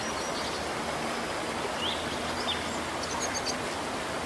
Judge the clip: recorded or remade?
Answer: recorded